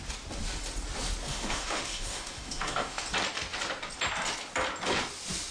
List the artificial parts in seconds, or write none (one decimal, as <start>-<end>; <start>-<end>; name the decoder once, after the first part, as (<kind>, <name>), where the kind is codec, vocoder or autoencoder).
1.3-3.0 (autoencoder, DAC-VAE)